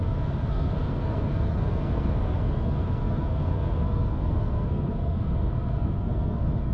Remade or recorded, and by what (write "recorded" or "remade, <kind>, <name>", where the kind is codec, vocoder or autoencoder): remade, codec, SNAC